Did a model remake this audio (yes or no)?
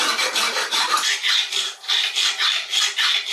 no